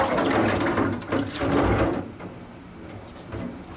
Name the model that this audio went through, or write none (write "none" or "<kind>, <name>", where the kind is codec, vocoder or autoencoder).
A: none